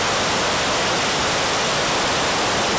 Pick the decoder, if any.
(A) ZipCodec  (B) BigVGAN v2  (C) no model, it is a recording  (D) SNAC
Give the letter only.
C